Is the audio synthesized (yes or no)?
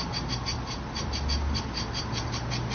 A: no